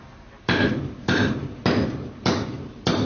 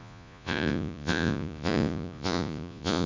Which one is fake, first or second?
second